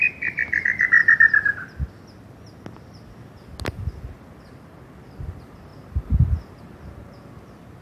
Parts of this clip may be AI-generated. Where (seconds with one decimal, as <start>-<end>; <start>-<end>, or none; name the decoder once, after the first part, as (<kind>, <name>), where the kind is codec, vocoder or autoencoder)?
none